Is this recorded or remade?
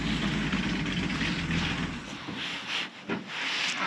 recorded